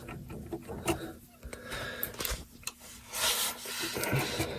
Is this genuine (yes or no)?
yes